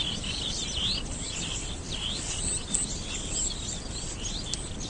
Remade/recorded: recorded